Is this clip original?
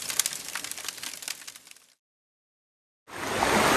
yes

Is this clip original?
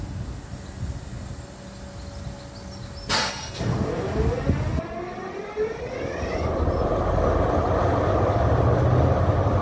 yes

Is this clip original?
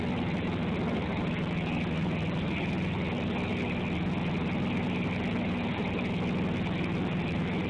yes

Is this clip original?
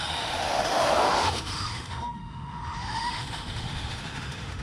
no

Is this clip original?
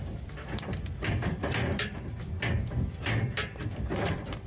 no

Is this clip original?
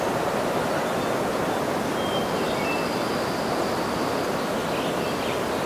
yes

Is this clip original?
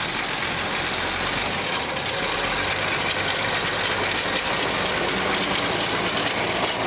yes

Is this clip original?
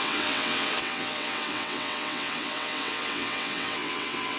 no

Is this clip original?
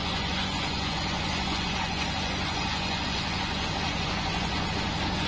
no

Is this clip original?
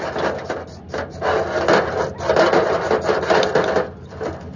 yes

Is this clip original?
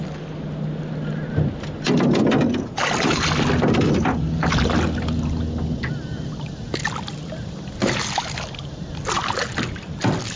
yes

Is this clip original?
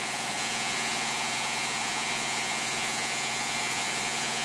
no